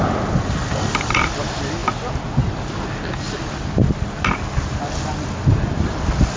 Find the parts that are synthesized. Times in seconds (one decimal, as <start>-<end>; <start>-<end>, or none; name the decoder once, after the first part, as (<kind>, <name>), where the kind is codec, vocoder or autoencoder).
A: none